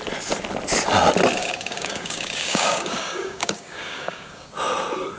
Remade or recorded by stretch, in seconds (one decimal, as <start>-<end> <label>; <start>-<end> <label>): 0.0-1.4 recorded; 1.4-4.5 remade; 4.5-5.2 recorded

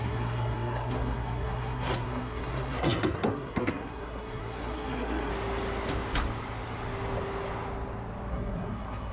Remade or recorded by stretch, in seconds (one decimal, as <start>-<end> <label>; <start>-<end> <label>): 0.0-5.3 remade; 5.3-8.3 recorded; 8.3-9.1 remade

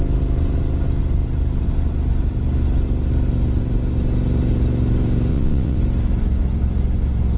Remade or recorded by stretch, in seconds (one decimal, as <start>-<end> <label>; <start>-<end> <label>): 0.0-5.3 recorded; 5.3-5.8 remade; 5.8-7.4 recorded

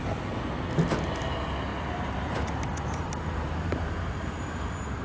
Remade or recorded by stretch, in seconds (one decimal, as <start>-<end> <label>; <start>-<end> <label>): 0.0-1.7 recorded; 1.7-5.0 remade

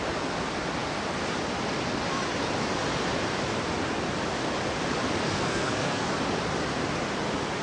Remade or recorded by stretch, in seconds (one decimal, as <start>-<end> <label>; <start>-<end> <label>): 0.0-5.2 recorded; 5.2-6.1 remade; 6.1-7.6 recorded

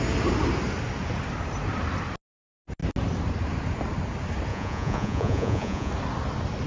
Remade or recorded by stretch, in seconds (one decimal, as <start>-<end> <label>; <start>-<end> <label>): 0.0-4.5 recorded; 4.5-5.9 remade; 5.9-6.7 recorded

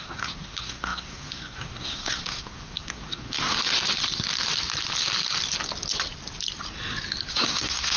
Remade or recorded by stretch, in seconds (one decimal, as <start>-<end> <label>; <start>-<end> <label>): 0.0-3.5 remade; 3.5-7.3 recorded; 7.3-8.0 remade